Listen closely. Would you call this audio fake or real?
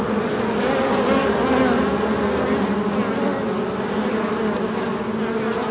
real